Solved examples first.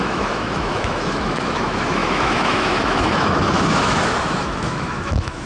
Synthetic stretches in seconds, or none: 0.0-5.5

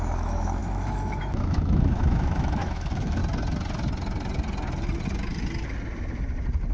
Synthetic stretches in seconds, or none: 0.0-3.2

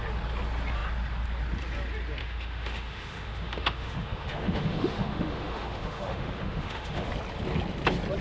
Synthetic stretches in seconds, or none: 2.2-7.1